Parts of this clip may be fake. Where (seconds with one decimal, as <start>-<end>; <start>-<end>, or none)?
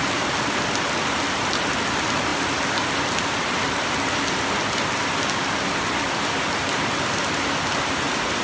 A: none